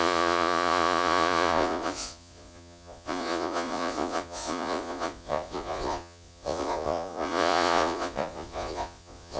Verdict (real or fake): fake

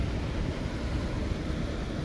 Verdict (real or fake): real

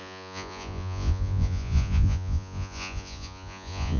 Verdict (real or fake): fake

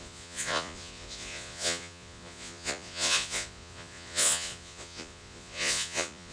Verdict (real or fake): fake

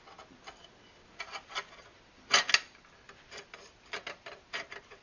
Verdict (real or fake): real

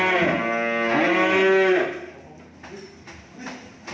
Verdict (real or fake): real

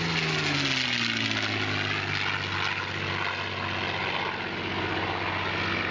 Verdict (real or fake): real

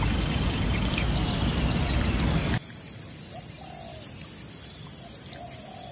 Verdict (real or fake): real